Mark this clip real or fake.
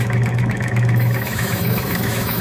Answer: fake